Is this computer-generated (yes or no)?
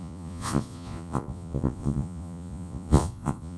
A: yes